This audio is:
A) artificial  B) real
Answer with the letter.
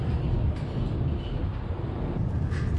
B